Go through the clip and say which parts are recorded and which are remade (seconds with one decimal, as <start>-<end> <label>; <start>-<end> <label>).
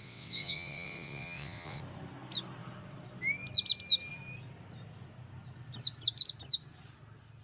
0.0-1.8 remade; 1.8-7.4 recorded